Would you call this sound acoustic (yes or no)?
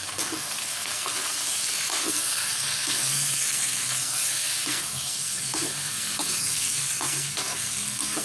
no